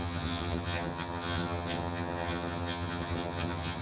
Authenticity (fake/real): fake